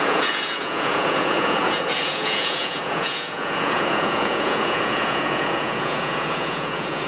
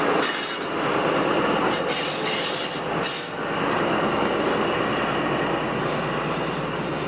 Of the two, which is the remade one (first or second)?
first